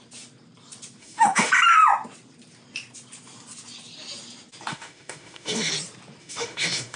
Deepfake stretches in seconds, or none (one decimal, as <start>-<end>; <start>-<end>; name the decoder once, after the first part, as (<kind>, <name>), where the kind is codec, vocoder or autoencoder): 1.0-1.5 (autoencoder, DAC-VAE); 4.7-5.7; 6.2-7.0